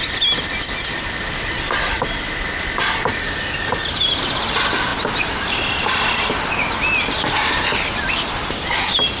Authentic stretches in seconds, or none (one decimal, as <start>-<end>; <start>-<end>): 0.0-3.1; 3.7-9.2